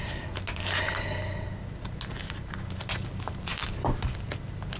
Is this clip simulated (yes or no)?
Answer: no